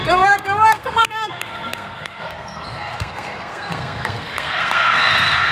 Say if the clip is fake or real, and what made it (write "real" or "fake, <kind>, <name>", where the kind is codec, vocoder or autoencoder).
fake, codec, SNAC